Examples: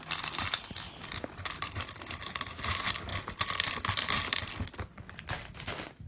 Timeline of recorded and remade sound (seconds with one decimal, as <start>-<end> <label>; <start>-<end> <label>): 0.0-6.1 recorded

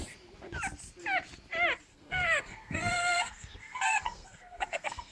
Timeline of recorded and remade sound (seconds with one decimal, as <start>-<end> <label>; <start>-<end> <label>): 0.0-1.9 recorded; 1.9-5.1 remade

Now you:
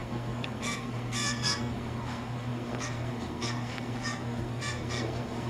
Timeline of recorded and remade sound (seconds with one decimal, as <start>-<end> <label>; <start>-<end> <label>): 0.0-5.5 remade